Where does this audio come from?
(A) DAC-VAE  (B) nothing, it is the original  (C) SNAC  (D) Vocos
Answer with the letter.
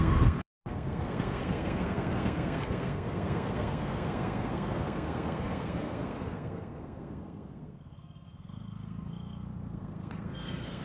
C